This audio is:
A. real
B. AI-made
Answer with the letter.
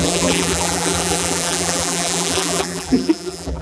B